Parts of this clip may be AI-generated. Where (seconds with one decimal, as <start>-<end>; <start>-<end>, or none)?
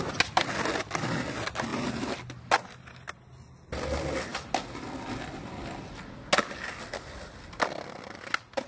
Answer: none